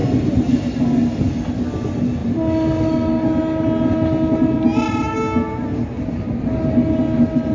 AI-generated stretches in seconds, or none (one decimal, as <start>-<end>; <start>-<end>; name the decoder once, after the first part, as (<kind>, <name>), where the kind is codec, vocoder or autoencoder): none